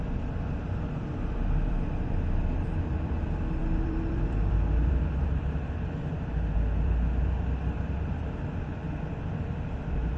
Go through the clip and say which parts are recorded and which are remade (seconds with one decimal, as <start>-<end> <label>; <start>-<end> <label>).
0.0-10.2 remade